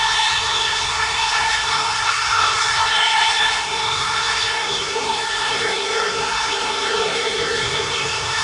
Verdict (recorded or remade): remade